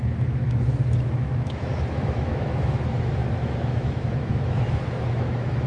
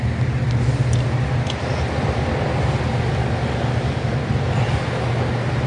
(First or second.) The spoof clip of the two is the first